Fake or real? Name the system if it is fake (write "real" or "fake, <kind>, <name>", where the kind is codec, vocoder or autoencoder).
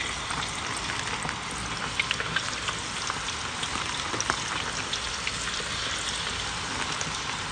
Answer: real